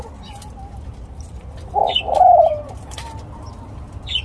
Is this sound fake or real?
real